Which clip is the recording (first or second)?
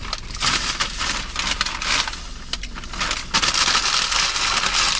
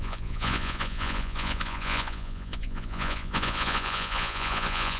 first